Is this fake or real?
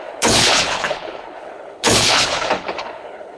fake